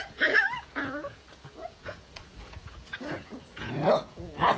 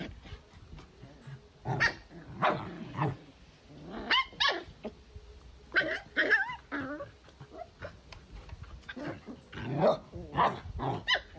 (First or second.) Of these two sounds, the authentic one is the second